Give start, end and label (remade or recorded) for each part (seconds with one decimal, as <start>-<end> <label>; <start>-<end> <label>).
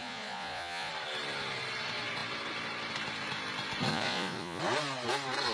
0.0-0.9 remade; 0.9-3.9 recorded; 3.9-4.6 remade; 4.6-5.5 recorded